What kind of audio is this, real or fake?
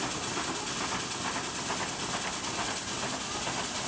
real